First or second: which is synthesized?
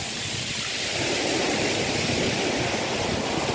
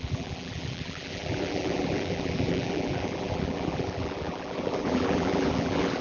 second